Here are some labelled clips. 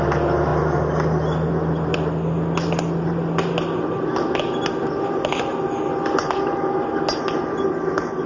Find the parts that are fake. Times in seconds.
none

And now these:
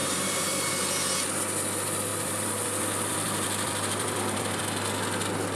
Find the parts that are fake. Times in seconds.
0.0-0.7; 2.1-4.6

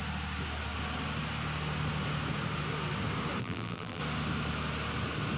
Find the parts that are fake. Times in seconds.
3.4-4.0

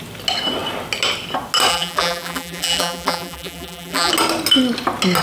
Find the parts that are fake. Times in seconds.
1.7-4.1

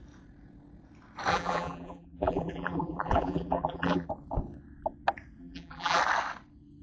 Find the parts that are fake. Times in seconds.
1.3-4.1; 5.4-6.0